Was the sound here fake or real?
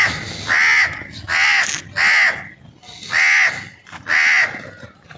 real